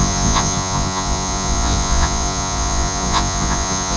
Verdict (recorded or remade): remade